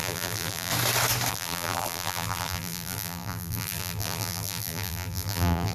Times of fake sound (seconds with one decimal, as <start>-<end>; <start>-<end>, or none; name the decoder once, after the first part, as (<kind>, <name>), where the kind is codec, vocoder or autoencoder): 0.0-0.7 (vocoder, BigVGAN v2); 1.3-5.7